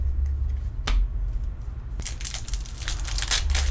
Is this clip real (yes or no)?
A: yes